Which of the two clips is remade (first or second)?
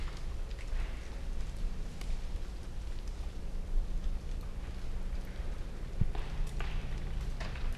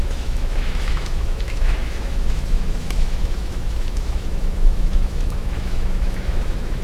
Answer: second